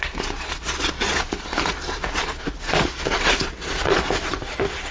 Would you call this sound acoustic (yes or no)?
no